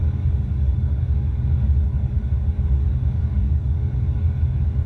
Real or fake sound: fake